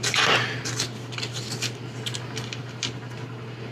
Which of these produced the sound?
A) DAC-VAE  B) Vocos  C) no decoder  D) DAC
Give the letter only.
C